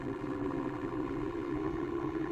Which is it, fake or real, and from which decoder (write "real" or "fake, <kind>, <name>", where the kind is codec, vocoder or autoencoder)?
fake, vocoder, BigVGAN v2